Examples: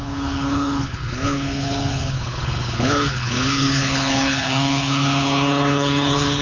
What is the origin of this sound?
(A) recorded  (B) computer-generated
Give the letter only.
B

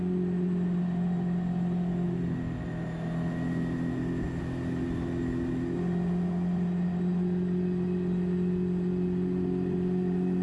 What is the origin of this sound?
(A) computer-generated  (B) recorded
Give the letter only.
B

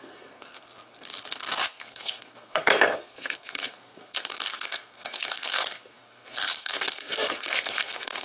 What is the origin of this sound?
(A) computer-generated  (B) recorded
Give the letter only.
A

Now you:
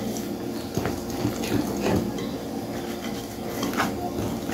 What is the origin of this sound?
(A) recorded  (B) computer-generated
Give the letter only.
A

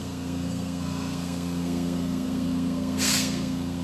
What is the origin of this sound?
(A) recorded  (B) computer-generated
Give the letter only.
B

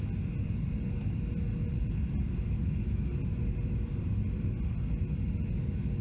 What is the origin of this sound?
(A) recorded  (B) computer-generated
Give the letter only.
A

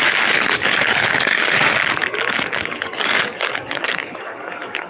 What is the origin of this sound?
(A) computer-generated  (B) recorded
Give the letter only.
A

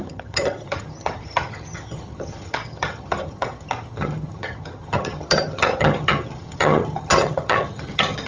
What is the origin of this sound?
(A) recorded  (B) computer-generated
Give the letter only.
B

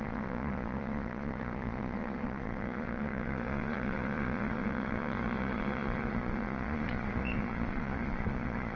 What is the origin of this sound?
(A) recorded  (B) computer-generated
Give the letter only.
B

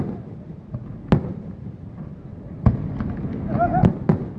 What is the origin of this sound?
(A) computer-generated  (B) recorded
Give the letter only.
B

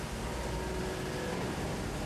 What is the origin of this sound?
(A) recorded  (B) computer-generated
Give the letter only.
A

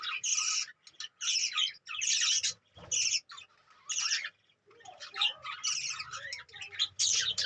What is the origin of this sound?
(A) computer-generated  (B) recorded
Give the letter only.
B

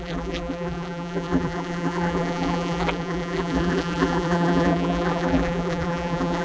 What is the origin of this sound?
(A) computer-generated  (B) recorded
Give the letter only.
A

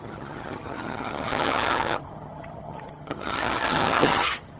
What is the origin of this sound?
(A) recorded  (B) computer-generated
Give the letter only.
B